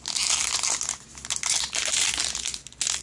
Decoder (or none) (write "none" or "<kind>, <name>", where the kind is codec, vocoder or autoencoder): none